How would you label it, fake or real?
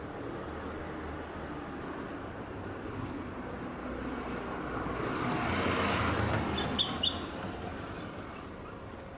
real